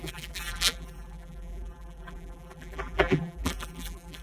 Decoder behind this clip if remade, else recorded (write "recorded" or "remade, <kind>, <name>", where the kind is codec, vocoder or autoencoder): remade, vocoder, BigVGAN v2